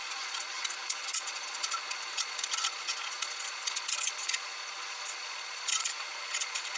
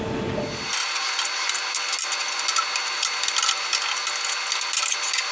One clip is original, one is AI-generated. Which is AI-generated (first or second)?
first